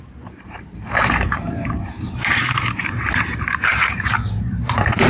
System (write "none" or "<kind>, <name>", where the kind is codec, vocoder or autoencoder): vocoder, BigVGAN v2